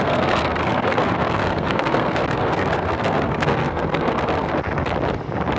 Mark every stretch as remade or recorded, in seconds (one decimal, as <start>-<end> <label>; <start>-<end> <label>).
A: 0.0-4.5 remade; 4.5-5.6 recorded